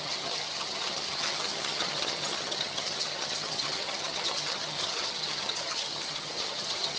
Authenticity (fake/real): fake